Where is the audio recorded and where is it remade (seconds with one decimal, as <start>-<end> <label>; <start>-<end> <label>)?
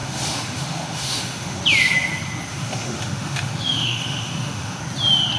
0.0-1.6 remade; 1.6-2.5 recorded; 2.5-4.8 remade; 4.8-5.4 recorded